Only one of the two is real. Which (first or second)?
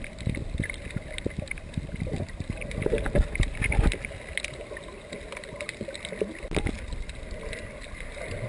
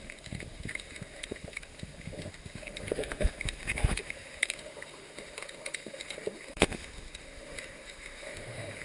first